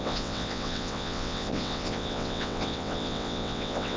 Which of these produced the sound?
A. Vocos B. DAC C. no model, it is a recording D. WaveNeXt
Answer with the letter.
D